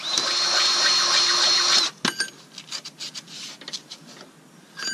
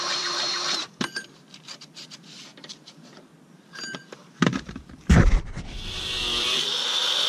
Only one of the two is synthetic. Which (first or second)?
second